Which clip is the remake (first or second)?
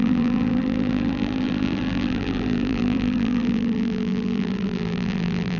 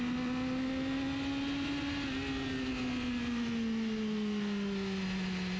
first